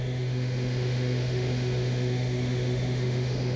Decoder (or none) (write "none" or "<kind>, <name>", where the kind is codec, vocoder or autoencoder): autoencoder, DAC-VAE